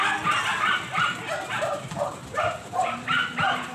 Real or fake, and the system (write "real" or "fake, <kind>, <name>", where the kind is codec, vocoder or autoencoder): real